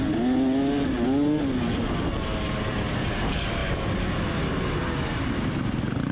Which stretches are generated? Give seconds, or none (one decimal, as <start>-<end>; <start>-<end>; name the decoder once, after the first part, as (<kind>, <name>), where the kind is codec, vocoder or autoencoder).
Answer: none